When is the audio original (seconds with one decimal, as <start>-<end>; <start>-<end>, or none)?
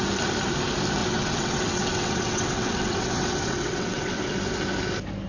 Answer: 0.0-1.0; 4.2-5.3